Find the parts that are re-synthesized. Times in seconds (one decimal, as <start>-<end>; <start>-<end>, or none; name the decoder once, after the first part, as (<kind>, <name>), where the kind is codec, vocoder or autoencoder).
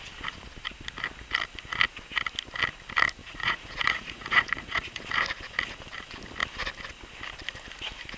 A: 3.2-5.0 (vocoder, Vocos)